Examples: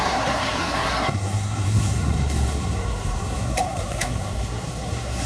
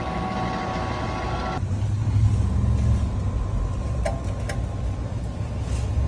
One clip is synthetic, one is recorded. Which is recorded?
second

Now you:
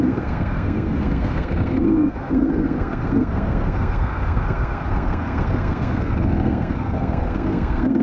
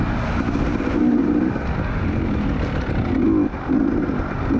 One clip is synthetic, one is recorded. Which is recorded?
second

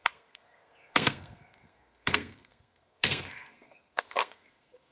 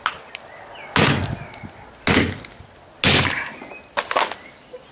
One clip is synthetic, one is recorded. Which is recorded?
second